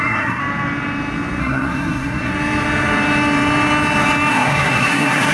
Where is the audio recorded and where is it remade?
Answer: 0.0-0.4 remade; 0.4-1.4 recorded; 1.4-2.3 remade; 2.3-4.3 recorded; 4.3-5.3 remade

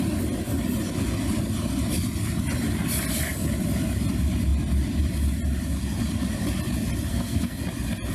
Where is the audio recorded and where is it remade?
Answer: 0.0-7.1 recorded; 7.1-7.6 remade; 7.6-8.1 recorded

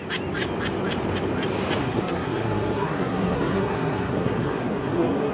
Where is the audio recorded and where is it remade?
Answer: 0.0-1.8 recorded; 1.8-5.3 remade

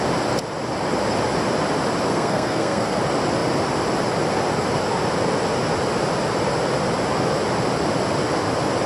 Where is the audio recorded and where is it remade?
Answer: 0.0-2.1 recorded; 2.1-3.0 remade; 3.0-8.9 recorded

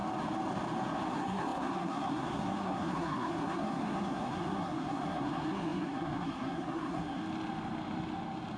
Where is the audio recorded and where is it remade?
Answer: 0.0-1.1 recorded; 1.1-7.2 remade; 7.2-8.6 recorded

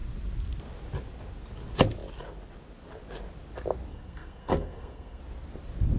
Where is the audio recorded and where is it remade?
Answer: 0.0-3.9 recorded; 3.9-5.2 remade; 5.2-6.0 recorded